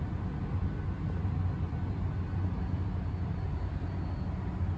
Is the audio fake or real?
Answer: real